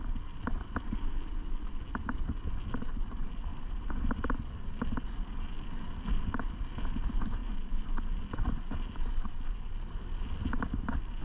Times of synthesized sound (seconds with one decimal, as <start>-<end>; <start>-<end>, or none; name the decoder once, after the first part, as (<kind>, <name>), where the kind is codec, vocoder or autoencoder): 3.5-4.3 (vocoder, BigVGAN v2)